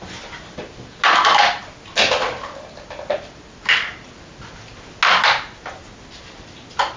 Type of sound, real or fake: real